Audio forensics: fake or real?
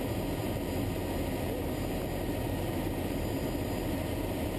real